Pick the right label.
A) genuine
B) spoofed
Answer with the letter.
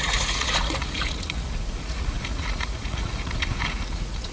B